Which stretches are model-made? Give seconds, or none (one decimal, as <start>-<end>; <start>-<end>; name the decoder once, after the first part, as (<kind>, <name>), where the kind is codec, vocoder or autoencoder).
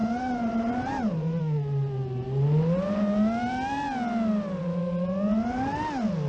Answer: 0.0-1.4 (vocoder, BigVGAN v2)